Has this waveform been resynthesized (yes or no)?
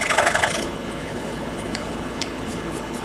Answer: yes